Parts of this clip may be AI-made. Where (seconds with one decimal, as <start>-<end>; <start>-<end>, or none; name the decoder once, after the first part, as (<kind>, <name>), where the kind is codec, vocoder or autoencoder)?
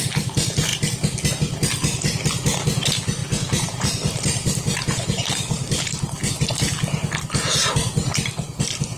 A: 3.2-6.3 (vocoder, BigVGAN v2)